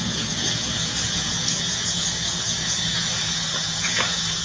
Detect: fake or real fake